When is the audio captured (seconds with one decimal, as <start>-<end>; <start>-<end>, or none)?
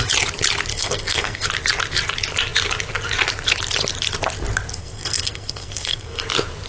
0.0-0.7; 1.5-4.8; 6.2-6.7